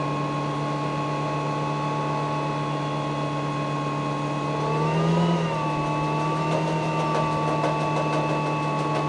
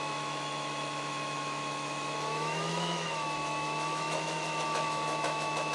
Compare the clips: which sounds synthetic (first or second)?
second